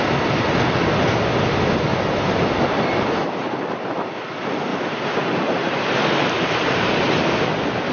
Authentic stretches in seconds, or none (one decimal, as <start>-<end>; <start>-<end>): 0.0-1.9; 2.4-4.7; 6.9-7.9